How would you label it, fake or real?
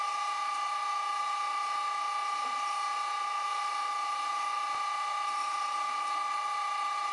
real